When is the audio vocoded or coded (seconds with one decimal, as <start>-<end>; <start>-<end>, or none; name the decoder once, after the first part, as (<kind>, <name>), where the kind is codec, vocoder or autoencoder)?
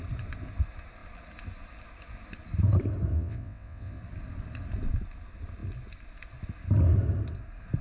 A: 3.1-4.0 (vocoder, WaveNeXt)